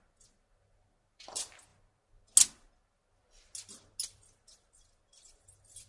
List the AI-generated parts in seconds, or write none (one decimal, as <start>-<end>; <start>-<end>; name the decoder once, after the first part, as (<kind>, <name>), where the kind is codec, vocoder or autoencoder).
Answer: none